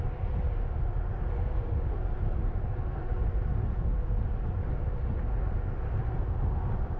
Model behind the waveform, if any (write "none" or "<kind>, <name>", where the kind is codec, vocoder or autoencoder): none